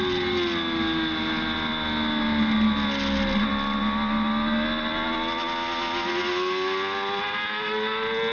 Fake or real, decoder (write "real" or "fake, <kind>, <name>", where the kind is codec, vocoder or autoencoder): real